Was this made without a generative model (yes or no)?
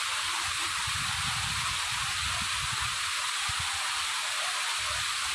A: yes